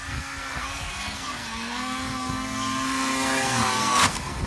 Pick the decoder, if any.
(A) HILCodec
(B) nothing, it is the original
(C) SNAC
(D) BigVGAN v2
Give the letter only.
C